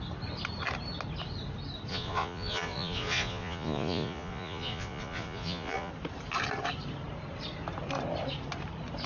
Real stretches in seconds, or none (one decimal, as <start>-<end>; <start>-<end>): 0.0-1.9; 5.9-9.1